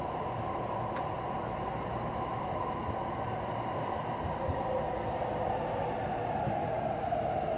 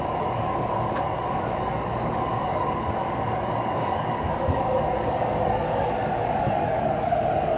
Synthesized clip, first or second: second